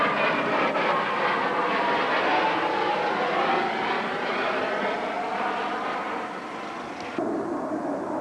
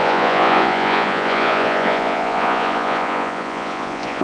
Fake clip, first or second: second